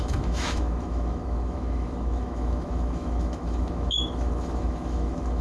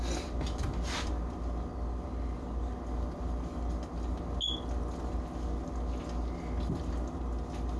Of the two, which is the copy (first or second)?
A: first